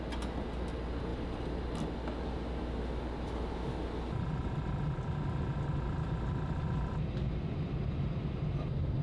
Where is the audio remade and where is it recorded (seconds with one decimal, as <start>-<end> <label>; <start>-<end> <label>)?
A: 0.0-1.1 recorded; 1.1-1.6 remade; 1.6-9.0 recorded